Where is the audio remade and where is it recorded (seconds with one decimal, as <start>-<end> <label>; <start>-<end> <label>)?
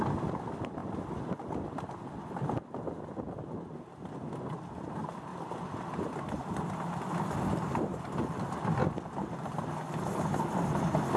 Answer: 0.0-7.9 recorded; 7.9-8.4 remade; 8.4-11.2 recorded